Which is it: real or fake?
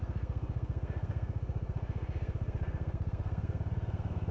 fake